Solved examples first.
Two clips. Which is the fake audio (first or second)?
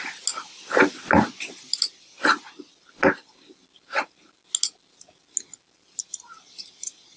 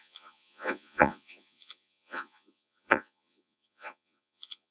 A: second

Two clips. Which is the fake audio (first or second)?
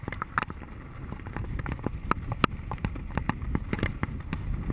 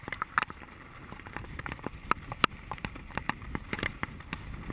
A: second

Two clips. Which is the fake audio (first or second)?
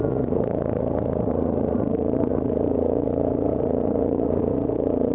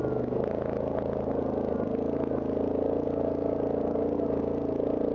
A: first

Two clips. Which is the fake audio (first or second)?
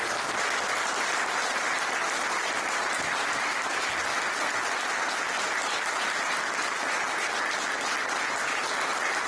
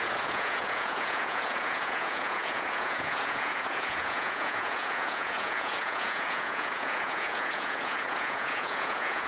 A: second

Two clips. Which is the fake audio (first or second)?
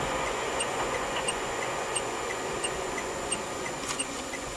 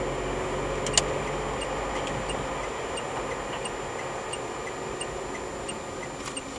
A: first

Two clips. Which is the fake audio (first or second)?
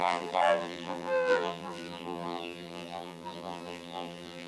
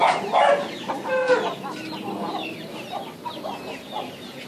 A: first